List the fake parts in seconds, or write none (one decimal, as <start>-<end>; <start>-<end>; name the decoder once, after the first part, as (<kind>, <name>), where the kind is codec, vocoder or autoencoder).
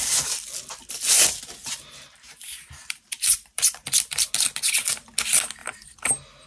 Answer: 1.6-4.3 (vocoder, BigVGAN v2); 5.6-6.1